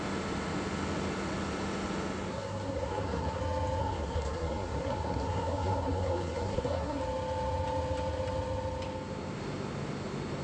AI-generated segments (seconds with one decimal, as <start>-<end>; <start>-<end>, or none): 2.3-3.4; 3.8-7.0